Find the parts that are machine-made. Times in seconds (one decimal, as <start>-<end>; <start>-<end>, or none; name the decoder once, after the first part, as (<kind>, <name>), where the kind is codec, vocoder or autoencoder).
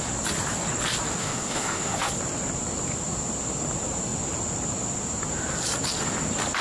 1.2-2.1 (autoencoder, DAC-VAE)